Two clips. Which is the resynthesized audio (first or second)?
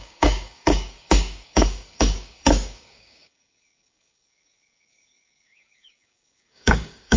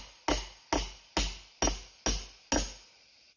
first